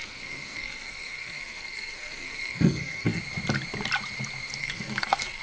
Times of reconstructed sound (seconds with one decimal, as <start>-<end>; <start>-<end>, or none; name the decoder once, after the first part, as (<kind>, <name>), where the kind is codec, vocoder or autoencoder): 0.0-3.2 (codec, SNAC); 4.6-5.4